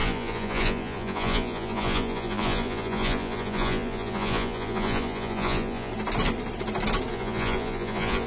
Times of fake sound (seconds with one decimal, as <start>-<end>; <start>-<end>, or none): 0.0-5.9; 7.1-8.3